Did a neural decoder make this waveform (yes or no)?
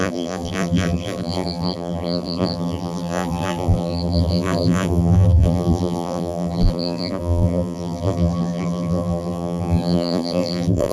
yes